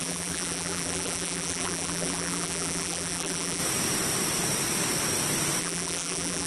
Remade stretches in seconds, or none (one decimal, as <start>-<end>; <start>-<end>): 0.0-3.6; 5.6-6.5